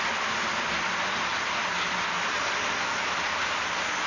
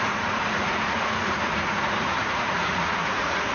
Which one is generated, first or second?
second